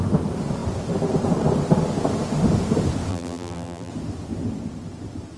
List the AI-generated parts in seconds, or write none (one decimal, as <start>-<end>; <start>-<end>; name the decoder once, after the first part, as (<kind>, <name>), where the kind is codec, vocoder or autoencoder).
3.1-3.9 (vocoder, BigVGAN v2)